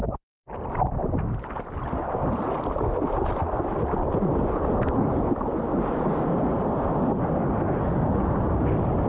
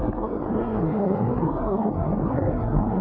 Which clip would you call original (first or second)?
first